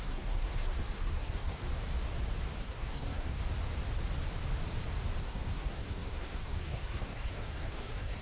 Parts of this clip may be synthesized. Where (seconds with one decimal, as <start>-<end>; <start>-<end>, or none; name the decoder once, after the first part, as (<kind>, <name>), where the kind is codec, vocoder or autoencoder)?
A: 0.0-1.6 (codec, SNAC); 2.6-3.4; 5.2-8.2